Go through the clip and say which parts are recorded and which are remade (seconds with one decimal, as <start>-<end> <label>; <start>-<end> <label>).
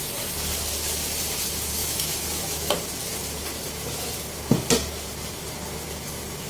0.0-1.8 recorded; 1.8-2.7 remade; 2.7-6.5 recorded